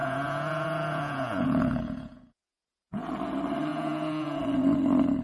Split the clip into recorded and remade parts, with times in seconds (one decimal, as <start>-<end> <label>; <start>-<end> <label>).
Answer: 0.0-3.1 remade; 3.1-3.7 recorded; 3.7-4.4 remade; 4.4-5.2 recorded